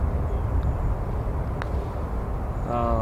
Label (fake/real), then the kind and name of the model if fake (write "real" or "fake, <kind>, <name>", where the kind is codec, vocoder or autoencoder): real